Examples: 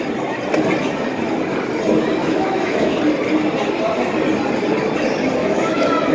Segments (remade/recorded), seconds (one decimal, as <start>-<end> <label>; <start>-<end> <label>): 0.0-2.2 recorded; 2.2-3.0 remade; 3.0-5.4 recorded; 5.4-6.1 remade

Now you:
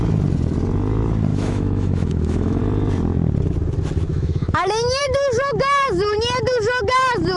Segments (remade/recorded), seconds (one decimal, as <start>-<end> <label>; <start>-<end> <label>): 0.0-1.3 recorded; 1.3-2.6 remade; 2.6-4.1 recorded; 4.1-5.0 remade; 5.0-7.4 recorded

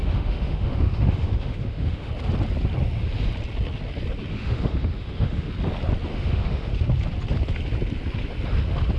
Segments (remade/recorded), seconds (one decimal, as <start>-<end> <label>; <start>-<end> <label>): 0.0-2.1 remade; 2.1-4.3 recorded; 4.3-5.5 remade; 5.5-6.1 recorded; 6.1-6.7 remade; 6.7-9.0 recorded

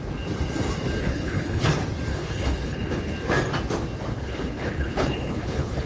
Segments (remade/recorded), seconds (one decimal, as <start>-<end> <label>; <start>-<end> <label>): 0.0-1.0 recorded; 1.0-1.7 remade; 1.7-2.1 recorded; 2.1-3.0 remade; 3.0-4.1 recorded; 4.1-5.9 remade

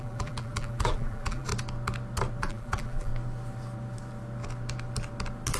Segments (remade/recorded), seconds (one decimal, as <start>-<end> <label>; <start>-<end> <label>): 0.0-1.5 remade; 1.5-2.4 recorded; 2.4-3.1 remade; 3.1-5.6 recorded

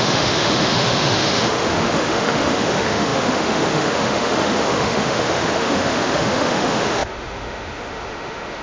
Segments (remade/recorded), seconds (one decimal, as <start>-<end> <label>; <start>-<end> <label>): 0.0-8.6 remade

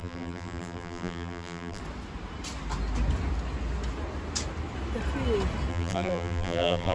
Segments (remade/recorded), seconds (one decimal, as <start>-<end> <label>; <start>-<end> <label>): 0.0-1.8 remade; 1.8-5.7 recorded; 5.7-6.9 remade